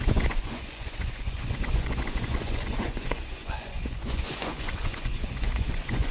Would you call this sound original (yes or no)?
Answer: no